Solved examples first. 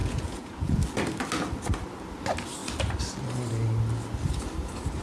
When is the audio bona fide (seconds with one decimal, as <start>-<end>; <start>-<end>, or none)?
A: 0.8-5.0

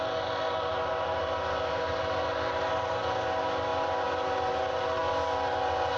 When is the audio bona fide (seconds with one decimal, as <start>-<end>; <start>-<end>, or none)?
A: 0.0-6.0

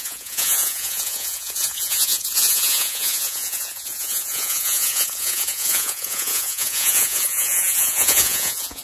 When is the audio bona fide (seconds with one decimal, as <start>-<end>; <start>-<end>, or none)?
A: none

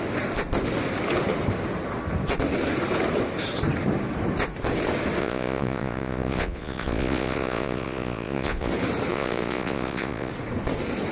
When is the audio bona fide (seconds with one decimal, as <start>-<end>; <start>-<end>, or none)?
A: 0.0-5.2; 8.7-9.1; 10.3-11.1